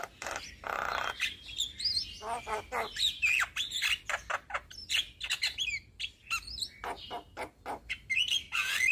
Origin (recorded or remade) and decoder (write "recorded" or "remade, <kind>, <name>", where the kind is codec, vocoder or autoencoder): recorded